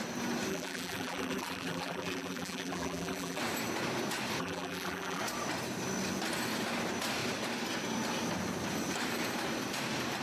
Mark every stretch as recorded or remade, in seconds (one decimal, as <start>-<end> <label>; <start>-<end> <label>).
0.0-0.5 recorded; 0.5-3.4 remade; 3.4-4.4 recorded; 4.4-5.2 remade; 5.2-10.2 recorded